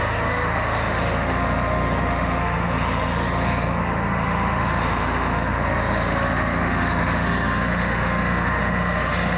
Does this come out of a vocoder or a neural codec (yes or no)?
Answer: yes